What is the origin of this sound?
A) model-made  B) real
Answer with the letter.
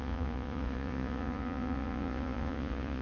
A